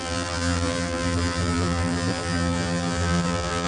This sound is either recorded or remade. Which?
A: remade